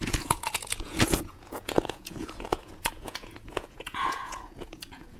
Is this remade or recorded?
remade